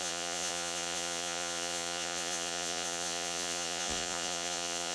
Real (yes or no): no